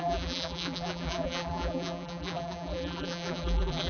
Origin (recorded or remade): remade